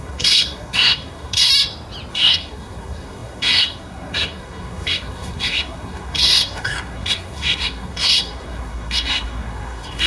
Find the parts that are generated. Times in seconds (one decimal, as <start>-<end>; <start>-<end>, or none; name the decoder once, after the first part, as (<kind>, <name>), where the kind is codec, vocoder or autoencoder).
0.0-1.5 (codec, SNAC); 2.1-10.1